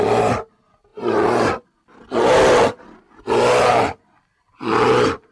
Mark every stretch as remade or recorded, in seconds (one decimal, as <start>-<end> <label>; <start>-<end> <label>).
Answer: 0.0-5.3 recorded

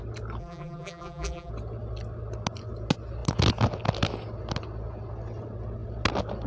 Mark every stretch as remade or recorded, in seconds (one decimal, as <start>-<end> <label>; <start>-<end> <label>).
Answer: 0.0-0.4 recorded; 0.4-1.5 remade; 1.5-6.5 recorded

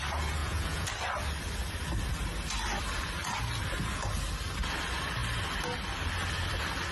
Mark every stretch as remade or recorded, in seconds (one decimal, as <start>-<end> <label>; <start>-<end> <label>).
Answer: 0.0-0.4 recorded; 0.4-0.9 remade; 0.9-6.9 recorded